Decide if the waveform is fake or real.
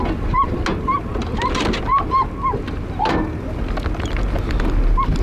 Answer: real